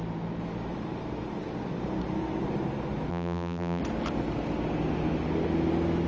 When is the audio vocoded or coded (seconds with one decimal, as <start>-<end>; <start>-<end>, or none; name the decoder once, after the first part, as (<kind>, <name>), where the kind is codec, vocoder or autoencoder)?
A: 3.1-3.8 (vocoder, BigVGAN v2)